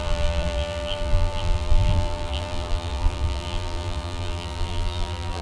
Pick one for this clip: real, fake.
fake